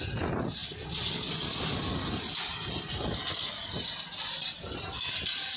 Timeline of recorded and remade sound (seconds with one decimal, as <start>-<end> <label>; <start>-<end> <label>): 0.0-5.6 recorded